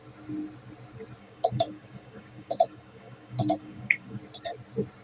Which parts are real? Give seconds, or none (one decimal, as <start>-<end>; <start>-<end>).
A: 0.0-1.2; 4.2-5.0